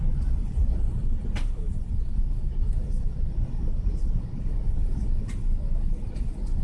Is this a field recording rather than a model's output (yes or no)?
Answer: yes